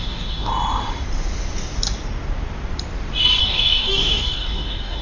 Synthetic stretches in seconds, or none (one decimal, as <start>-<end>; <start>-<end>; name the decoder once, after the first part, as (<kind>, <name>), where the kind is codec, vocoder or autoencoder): 0.0-0.5 (codec, DAC); 3.4-5.0